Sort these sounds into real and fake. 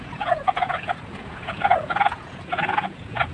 fake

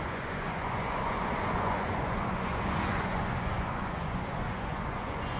fake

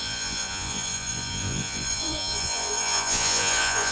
fake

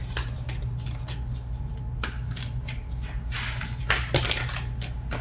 real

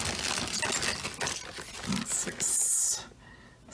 real